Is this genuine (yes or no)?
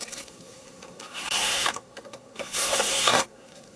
no